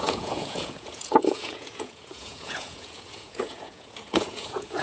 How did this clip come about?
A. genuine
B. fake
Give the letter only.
B